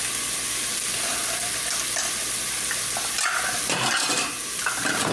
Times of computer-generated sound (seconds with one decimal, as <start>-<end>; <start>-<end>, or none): none